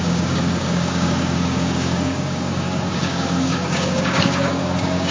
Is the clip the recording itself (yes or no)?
no